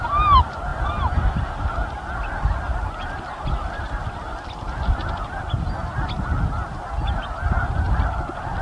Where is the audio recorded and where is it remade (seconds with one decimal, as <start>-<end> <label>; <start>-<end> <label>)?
0.0-8.6 recorded